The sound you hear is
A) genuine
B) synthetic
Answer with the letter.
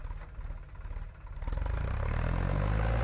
A